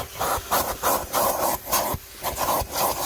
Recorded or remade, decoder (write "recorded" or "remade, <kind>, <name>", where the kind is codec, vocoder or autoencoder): recorded